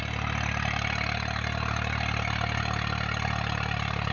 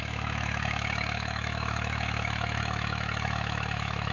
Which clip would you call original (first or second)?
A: first